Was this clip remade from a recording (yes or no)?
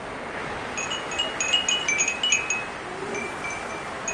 no